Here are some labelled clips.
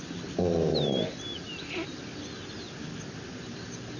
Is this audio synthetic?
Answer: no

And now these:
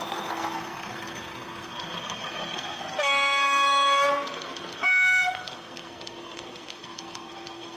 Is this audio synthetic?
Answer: yes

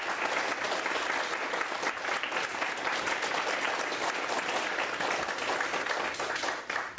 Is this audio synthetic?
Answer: no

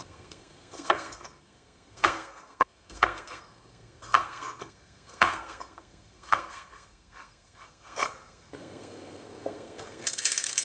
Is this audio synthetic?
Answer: yes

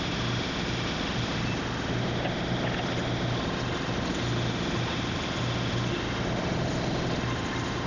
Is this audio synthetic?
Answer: no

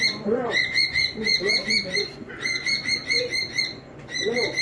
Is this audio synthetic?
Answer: yes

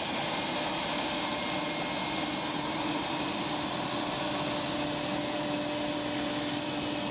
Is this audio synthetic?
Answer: no